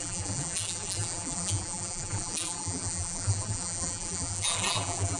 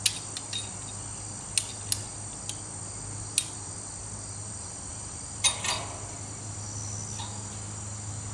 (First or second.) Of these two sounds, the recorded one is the second